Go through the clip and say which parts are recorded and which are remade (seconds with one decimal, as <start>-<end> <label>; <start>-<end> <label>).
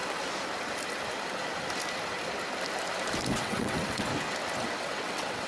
0.0-3.3 recorded; 3.3-4.1 remade; 4.1-4.8 recorded; 4.8-5.5 remade